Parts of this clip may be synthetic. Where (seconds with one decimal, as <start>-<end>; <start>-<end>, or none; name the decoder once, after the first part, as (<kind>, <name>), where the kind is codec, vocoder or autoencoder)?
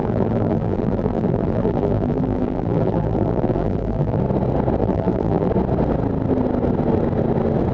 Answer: 0.0-4.2 (vocoder, BigVGAN v2); 4.8-5.5